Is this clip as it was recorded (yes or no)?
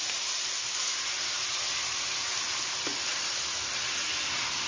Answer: yes